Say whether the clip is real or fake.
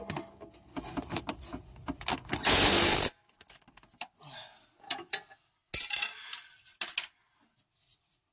real